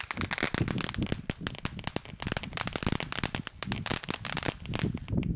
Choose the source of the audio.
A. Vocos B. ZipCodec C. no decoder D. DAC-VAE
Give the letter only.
C